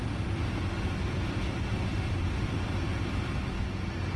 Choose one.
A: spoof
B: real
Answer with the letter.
B